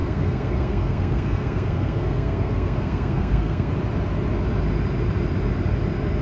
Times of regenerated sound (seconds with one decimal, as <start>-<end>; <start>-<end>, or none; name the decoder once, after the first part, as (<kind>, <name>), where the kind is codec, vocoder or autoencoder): 0.0-3.7 (codec, SNAC)

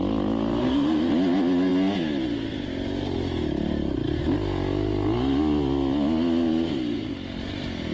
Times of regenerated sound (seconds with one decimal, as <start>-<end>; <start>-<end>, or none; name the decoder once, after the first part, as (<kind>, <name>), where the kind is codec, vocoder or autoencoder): 0.6-1.1 (codec, SNAC)

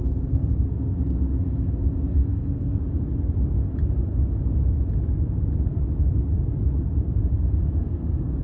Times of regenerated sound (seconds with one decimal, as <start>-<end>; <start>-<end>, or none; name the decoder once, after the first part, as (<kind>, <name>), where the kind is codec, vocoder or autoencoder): 0.0-2.8 (codec, SNAC); 7.8-8.4

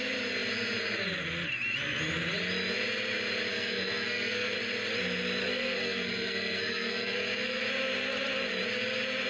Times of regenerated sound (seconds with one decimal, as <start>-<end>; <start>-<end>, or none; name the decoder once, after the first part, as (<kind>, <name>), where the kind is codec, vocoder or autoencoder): 3.5-4.5 (codec, SNAC); 5.4-7.6